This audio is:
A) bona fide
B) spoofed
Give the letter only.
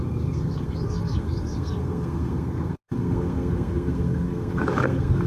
B